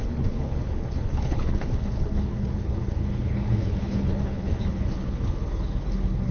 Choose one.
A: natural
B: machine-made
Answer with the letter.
B